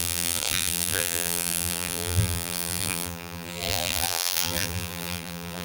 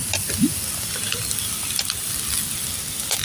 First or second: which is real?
second